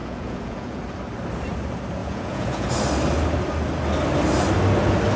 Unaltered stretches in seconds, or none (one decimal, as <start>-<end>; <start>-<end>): 0.8-2.0; 2.7-5.2